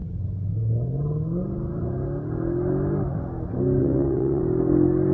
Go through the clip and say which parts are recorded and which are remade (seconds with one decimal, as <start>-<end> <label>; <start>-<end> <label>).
0.0-3.8 recorded; 3.8-4.4 remade; 4.4-5.1 recorded